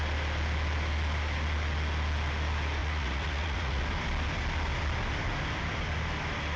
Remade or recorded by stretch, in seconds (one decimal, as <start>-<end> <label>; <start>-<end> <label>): 0.0-2.8 recorded; 2.8-3.8 remade; 3.8-6.6 recorded